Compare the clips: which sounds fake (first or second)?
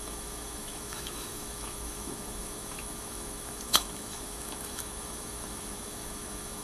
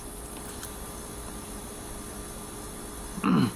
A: first